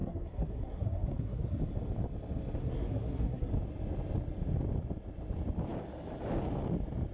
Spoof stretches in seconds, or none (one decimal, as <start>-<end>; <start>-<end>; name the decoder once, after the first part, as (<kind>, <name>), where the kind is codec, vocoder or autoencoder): 0.0-1.6 (codec, SNAC); 2.6-3.5